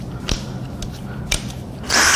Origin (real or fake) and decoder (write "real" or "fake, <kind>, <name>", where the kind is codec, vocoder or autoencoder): real